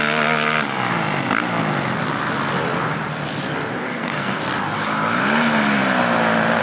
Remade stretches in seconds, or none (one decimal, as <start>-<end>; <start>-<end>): 3.8-4.4